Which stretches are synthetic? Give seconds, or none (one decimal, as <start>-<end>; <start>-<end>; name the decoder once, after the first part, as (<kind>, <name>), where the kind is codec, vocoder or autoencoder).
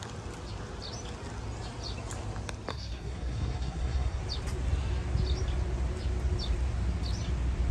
2.7-4.2 (codec, SNAC)